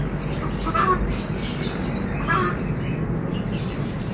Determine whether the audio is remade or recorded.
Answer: recorded